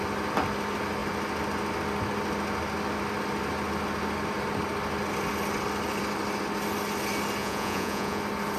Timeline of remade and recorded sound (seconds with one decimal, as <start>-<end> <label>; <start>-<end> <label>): 0.0-7.4 recorded; 7.4-8.2 remade; 8.2-8.6 recorded